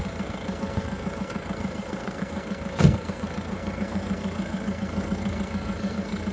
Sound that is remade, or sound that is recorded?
remade